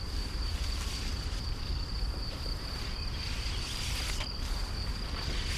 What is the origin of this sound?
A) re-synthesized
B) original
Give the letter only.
A